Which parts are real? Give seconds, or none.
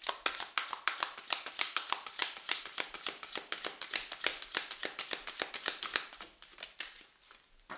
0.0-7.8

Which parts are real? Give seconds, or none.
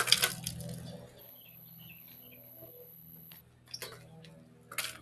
0.0-1.2; 3.4-5.0